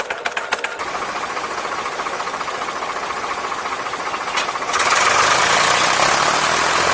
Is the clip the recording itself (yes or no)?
yes